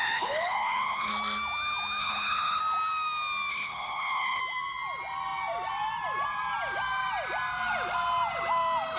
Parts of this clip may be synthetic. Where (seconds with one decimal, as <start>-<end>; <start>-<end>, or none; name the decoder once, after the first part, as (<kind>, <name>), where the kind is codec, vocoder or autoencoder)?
0.0-1.1 (codec, HILCodec); 2.0-2.6; 3.5-4.4